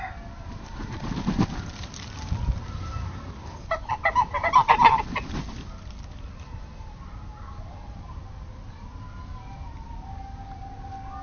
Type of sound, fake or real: real